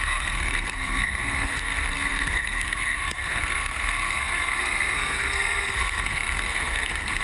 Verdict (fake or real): fake